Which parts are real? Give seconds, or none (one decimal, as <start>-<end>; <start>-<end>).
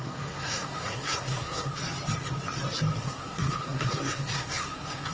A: 1.8-3.0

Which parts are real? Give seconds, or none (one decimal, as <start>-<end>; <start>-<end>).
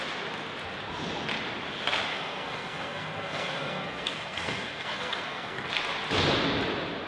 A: 0.0-2.1; 5.7-7.1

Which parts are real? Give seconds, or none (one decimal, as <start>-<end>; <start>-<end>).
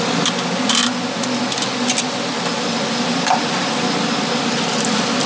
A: 0.0-5.3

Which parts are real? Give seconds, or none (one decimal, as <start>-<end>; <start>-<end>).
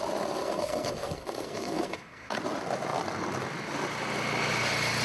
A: 0.0-0.4; 2.4-5.0